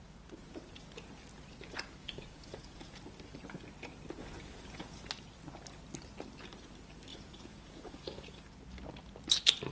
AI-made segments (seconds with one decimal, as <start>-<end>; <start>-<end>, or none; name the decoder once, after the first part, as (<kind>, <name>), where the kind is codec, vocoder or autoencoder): 2.0-3.0 (vocoder, Vocos); 4.2-5.1; 7.1-8.4